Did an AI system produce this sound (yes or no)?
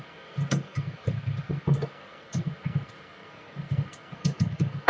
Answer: yes